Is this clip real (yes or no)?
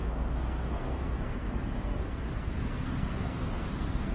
no